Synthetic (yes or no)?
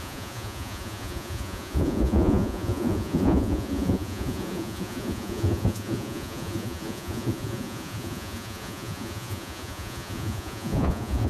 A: yes